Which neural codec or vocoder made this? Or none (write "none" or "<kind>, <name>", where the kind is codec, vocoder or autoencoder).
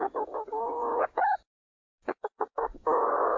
codec, DAC